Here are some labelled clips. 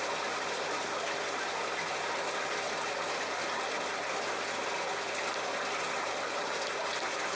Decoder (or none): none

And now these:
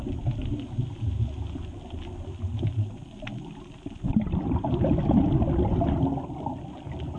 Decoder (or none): none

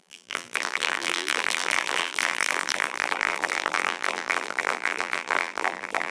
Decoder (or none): vocoder, BigVGAN v2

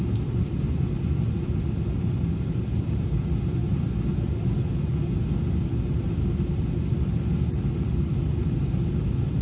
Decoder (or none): none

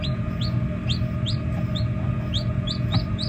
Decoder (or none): vocoder, BigVGAN v2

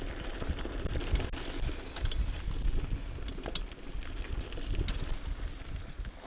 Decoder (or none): none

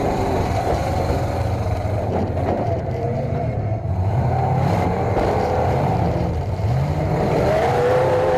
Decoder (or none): vocoder, BigVGAN v2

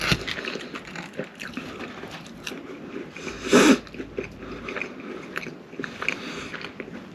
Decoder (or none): none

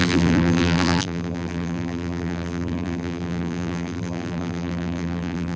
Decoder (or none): vocoder, BigVGAN v2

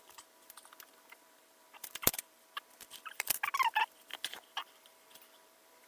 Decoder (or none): vocoder, BigVGAN v2